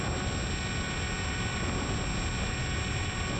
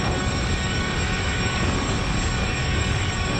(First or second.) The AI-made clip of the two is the second